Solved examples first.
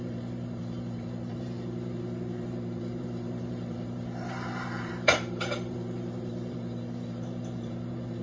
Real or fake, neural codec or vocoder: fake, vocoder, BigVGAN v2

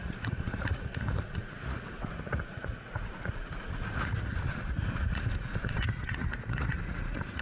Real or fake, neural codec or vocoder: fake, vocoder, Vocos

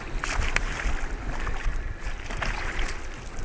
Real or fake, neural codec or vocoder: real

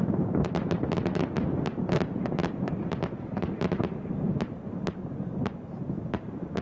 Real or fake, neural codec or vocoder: fake, vocoder, BigVGAN v2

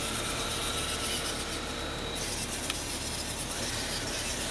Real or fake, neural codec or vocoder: real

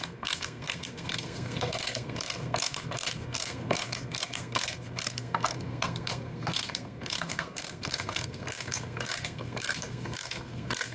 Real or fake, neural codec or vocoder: fake, codec, SNAC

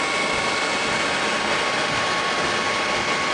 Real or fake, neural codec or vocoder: real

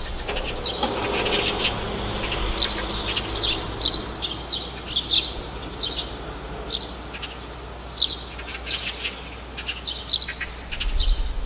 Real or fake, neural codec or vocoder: real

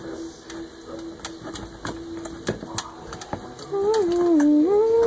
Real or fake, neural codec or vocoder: real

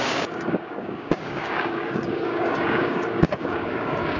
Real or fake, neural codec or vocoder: fake, codec, DAC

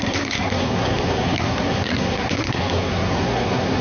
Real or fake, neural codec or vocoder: fake, codec, SNAC